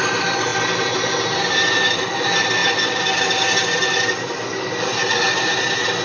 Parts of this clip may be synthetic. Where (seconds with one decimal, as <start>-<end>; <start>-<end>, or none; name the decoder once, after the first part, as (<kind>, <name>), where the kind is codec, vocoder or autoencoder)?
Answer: none